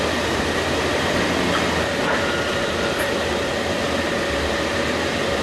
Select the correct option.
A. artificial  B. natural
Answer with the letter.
B